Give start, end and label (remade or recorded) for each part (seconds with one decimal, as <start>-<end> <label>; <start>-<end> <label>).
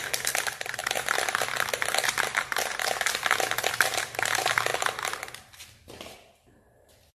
0.0-7.2 recorded